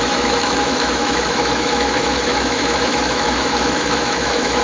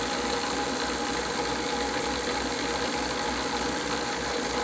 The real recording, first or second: second